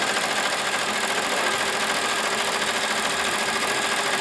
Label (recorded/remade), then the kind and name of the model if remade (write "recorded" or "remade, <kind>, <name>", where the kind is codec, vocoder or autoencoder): recorded